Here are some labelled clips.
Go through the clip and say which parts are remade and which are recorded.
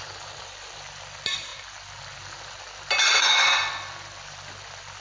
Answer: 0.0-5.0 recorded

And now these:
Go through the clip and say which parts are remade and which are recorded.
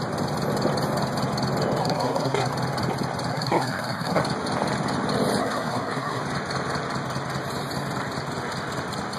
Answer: 0.0-1.8 recorded; 1.8-2.5 remade; 2.5-3.3 recorded; 3.3-4.2 remade; 4.2-5.4 recorded; 5.4-6.2 remade; 6.2-9.2 recorded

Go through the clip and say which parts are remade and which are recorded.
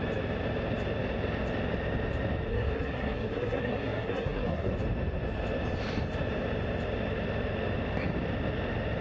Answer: 0.0-2.5 recorded; 2.5-4.7 remade; 4.7-9.0 recorded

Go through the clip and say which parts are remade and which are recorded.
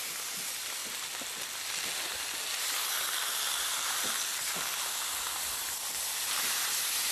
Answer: 0.0-7.1 recorded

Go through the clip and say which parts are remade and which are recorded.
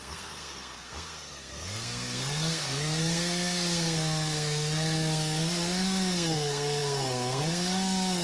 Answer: 0.0-8.2 remade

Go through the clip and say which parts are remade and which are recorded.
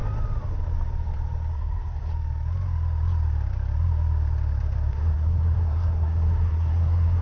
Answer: 0.0-1.5 recorded; 1.5-2.1 remade; 2.1-4.9 recorded; 4.9-7.2 remade